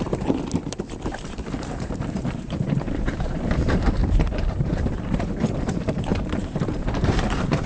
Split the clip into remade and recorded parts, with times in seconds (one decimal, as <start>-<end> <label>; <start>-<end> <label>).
0.0-7.7 remade